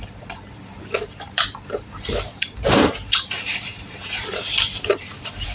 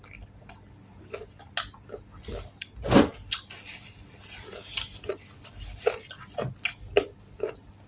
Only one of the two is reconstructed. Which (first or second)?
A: first